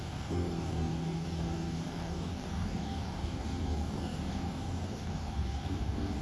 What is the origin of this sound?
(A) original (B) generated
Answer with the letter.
B